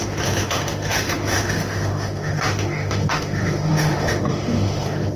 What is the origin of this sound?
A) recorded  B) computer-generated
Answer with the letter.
B